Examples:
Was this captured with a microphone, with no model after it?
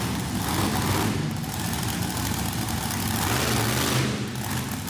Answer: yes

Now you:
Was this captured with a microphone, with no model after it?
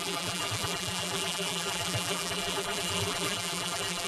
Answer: no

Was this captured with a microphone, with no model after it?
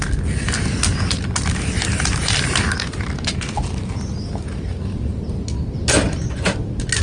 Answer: yes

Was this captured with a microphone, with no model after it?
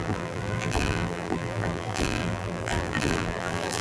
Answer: no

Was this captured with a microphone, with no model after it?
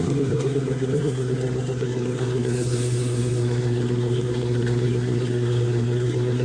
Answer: no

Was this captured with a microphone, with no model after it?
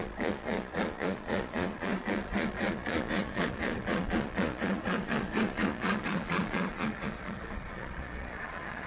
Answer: no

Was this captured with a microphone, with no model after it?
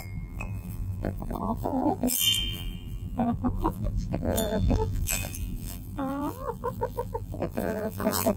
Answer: no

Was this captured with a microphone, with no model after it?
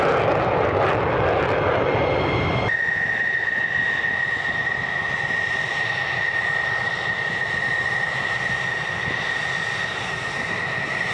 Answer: yes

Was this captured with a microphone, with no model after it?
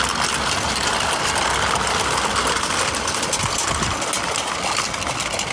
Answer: yes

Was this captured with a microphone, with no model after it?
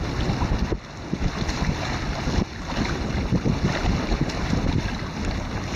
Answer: yes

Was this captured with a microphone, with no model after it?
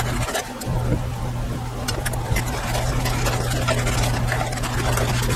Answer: yes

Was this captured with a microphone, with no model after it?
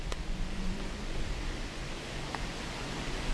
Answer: no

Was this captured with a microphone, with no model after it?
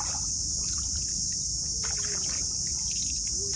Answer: yes